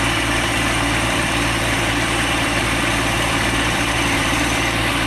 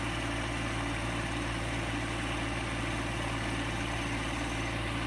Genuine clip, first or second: second